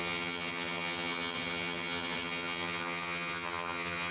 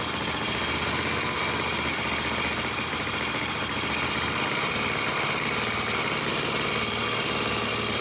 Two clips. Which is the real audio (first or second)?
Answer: second